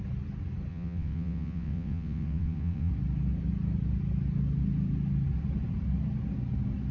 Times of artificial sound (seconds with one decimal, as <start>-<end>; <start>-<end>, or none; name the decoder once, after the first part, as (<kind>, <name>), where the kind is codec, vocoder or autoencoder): 0.7-2.9 (vocoder, WaveNeXt)

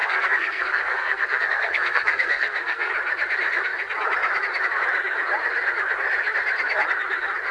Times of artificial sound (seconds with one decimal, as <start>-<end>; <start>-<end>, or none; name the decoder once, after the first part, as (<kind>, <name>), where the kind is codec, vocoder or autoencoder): 0.0-2.9 (codec, SNAC)

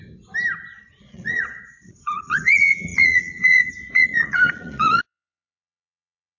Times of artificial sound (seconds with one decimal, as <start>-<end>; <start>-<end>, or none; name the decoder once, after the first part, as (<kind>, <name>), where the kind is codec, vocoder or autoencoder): 1.0-6.4 (vocoder, Vocos)

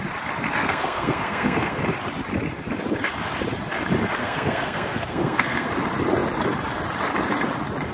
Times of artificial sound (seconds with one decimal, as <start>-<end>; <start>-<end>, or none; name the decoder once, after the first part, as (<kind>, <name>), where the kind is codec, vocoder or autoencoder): 0.6-1.8 (codec, SNAC); 4.2-5.7

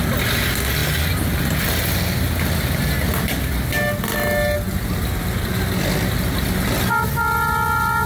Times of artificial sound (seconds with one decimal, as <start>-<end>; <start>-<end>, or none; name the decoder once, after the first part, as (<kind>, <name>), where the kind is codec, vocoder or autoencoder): none

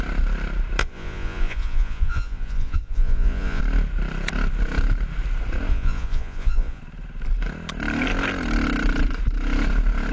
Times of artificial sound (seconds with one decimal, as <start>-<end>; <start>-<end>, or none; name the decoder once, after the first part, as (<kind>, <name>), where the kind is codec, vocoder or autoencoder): 0.8-3.6 (vocoder, Vocos); 5.7-6.8

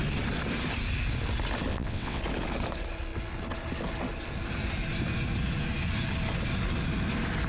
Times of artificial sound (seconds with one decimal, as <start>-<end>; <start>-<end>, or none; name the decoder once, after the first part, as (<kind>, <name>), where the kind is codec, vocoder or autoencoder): 1.7-2.2 (vocoder, WaveNeXt)

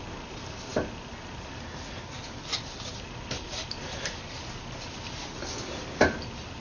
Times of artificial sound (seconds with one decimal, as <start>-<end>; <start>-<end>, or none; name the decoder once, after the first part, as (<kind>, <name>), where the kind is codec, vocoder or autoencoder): none